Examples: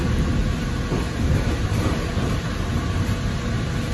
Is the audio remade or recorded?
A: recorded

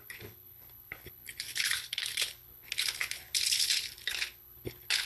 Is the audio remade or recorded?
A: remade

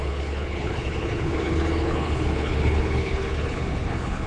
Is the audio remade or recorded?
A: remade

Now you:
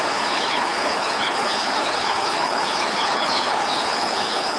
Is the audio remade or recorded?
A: remade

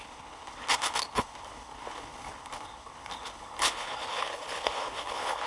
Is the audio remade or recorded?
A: remade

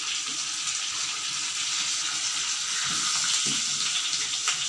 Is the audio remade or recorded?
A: recorded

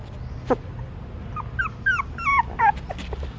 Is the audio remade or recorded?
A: recorded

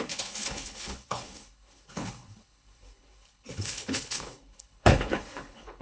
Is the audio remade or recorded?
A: remade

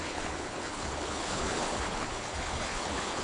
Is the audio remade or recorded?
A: remade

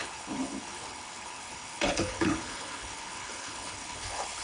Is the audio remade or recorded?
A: remade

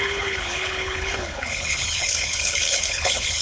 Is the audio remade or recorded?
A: remade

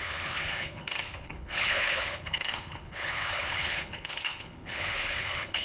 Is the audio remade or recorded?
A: remade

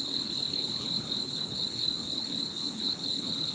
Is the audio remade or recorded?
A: remade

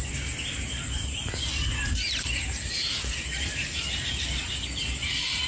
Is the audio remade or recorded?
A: recorded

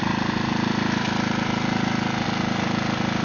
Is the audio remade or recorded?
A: recorded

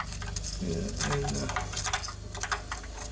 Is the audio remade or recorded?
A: recorded